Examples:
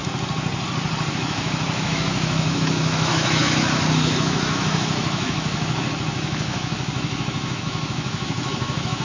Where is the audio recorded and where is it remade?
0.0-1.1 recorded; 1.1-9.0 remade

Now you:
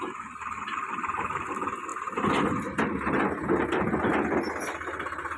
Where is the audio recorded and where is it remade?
0.0-5.4 recorded

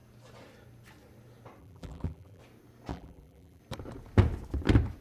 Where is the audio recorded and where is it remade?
0.0-1.6 recorded; 1.6-2.4 remade; 2.4-2.9 recorded; 2.9-3.6 remade; 3.6-5.0 recorded